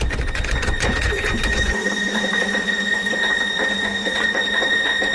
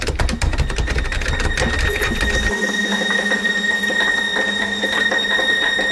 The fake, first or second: first